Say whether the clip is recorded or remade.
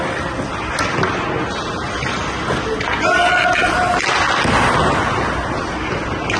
recorded